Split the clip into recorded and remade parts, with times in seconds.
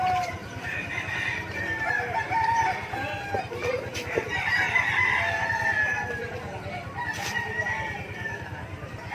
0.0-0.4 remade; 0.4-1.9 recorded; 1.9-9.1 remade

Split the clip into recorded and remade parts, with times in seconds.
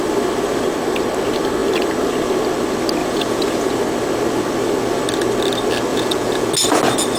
0.0-3.0 recorded; 3.0-3.7 remade; 3.7-5.9 recorded; 5.9-6.5 remade; 6.5-7.2 recorded